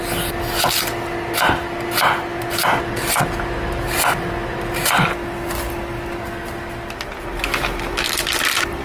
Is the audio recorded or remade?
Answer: recorded